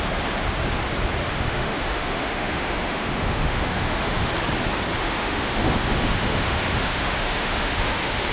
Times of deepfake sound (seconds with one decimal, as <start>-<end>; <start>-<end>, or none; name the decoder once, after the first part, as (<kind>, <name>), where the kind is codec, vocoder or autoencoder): 1.2-4.3 (autoencoder, DAC-VAE); 4.9-8.3